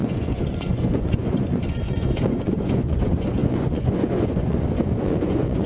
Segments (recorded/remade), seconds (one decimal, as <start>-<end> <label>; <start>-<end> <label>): 0.0-5.7 remade